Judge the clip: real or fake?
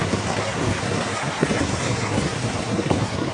fake